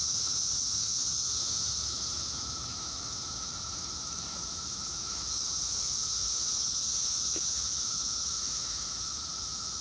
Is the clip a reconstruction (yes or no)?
yes